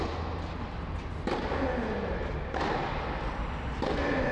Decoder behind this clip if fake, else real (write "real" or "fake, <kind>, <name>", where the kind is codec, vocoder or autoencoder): real